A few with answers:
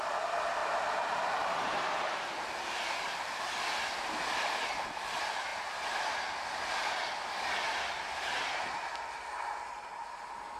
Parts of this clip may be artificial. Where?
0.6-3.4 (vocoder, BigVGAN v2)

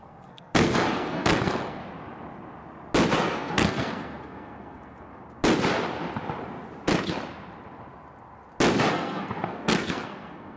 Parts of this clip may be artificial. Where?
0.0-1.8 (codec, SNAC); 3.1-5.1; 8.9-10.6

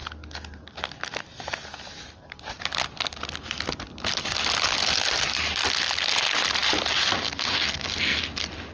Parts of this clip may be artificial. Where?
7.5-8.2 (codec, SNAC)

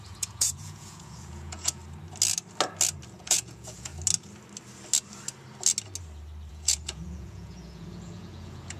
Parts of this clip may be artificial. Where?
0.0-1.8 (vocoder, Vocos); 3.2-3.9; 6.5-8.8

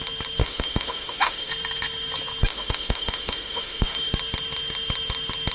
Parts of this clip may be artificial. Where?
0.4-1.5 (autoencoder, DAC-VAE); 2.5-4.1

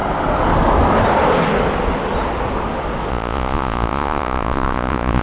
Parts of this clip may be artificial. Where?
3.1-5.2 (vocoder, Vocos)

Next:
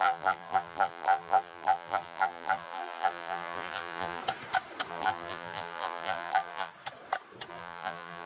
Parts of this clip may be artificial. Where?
0.0-4.2 (vocoder, BigVGAN v2); 4.9-6.7; 7.5-8.3